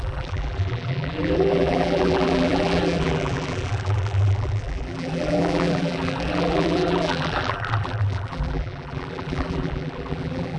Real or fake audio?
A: fake